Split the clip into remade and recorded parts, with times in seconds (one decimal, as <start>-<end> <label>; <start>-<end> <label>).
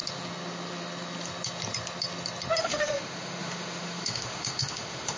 0.0-2.6 recorded; 2.6-5.2 remade